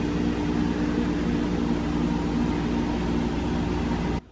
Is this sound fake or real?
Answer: real